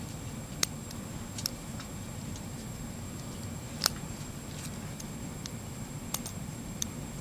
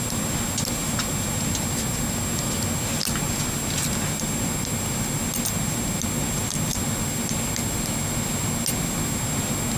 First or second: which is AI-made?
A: first